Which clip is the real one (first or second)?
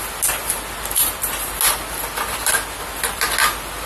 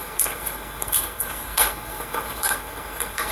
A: first